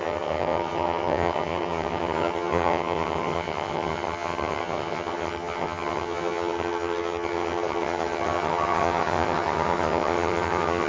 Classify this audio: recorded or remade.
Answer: remade